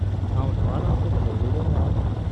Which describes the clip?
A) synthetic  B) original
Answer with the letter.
B